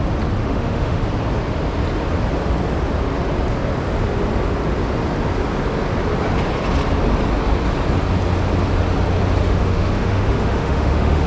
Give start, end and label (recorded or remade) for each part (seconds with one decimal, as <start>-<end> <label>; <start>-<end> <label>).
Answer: 0.0-0.4 recorded; 0.4-1.0 remade; 1.0-9.4 recorded; 9.4-11.3 remade